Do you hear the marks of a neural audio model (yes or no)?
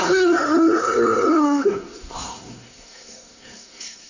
yes